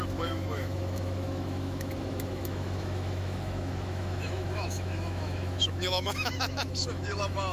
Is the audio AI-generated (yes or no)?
yes